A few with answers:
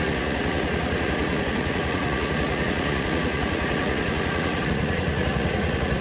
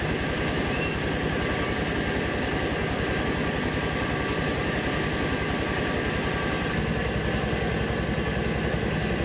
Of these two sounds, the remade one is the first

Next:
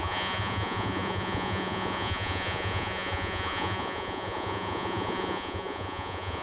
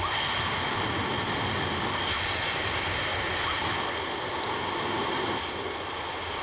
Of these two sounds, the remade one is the first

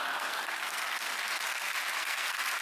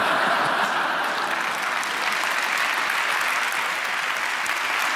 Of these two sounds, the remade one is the first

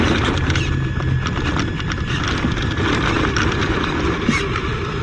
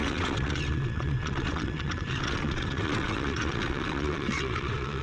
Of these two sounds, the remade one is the second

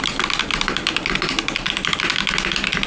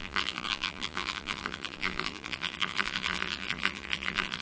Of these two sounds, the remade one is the second